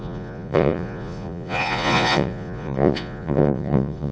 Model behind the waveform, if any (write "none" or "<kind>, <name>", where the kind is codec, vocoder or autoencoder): vocoder, Vocos